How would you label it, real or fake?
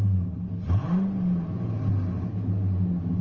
real